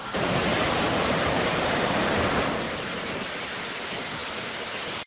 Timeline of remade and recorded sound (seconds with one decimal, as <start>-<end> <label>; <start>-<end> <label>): 0.0-3.1 remade; 3.1-5.1 recorded